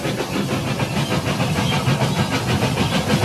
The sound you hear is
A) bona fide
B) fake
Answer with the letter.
A